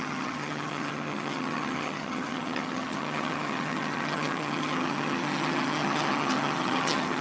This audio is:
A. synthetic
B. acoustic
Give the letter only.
A